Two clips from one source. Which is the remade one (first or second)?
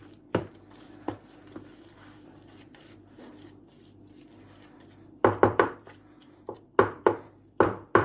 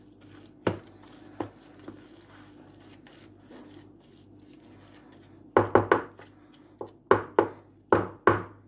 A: first